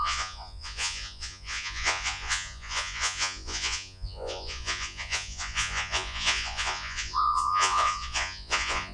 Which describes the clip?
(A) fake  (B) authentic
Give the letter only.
A